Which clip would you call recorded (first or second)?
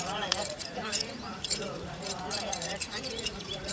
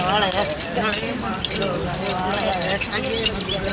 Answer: second